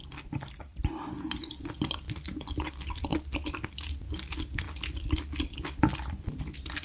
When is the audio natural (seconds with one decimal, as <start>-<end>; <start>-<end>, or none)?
0.0-0.7; 1.6-3.1; 3.9-6.8